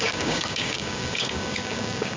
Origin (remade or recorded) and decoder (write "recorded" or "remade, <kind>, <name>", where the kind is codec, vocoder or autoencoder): remade, codec, DAC